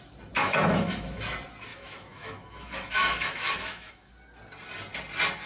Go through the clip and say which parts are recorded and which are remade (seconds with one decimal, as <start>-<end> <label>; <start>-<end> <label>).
0.0-0.4 recorded; 0.4-1.2 remade; 1.2-1.7 recorded; 1.7-4.1 remade; 4.1-5.5 recorded